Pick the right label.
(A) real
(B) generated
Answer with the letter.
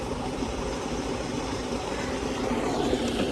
B